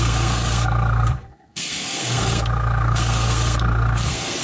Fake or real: fake